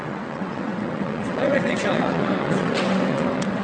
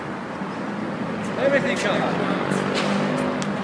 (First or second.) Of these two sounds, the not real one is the first